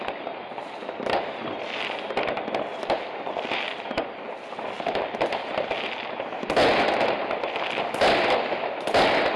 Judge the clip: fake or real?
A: real